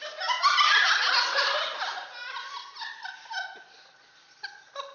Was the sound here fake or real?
real